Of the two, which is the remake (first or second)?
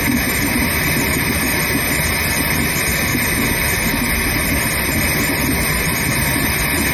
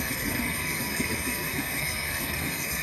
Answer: second